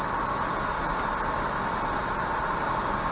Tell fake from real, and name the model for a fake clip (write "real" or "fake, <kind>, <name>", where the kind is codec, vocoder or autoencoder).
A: real